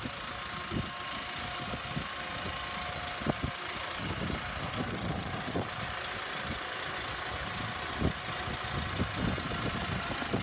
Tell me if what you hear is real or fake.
real